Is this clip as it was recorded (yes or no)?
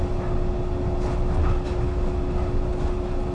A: yes